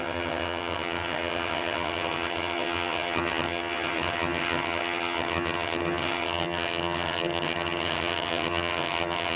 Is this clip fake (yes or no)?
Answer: yes